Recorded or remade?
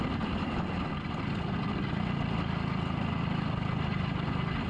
recorded